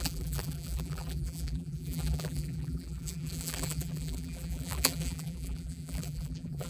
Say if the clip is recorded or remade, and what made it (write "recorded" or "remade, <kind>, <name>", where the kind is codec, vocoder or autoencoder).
remade, vocoder, BigVGAN v2